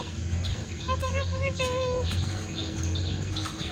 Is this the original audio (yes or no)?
no